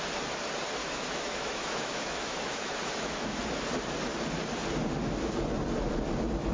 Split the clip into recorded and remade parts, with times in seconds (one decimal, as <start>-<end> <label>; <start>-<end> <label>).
0.0-0.8 recorded; 0.8-3.4 remade; 3.4-6.5 recorded